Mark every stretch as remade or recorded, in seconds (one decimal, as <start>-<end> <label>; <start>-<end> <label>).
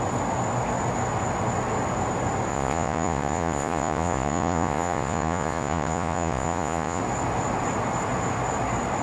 0.0-2.5 recorded; 2.5-7.0 remade; 7.0-9.0 recorded